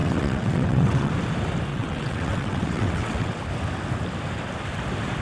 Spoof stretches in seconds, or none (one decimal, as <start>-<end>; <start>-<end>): 0.0-1.1; 1.7-3.4